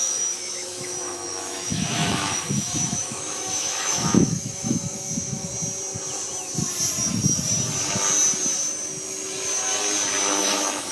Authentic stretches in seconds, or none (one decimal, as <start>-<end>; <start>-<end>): 5.5-10.4